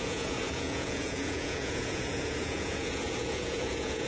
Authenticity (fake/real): fake